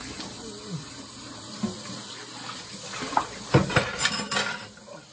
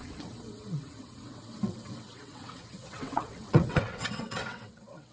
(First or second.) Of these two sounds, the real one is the first